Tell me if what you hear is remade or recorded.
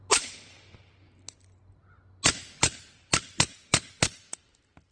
recorded